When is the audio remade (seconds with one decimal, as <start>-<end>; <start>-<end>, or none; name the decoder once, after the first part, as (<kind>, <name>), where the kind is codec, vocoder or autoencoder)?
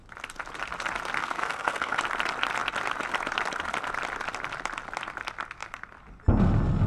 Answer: 1.2-2.0 (codec, SNAC)